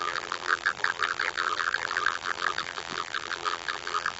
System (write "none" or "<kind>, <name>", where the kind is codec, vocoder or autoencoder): vocoder, BigVGAN v2